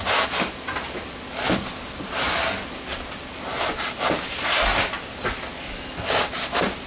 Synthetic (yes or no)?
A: no